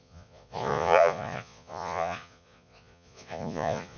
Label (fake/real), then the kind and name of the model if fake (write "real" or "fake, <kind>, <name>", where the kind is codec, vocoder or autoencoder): fake, vocoder, Vocos